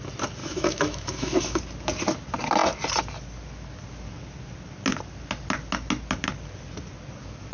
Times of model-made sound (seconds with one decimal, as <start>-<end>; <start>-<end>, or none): 0.4-1.6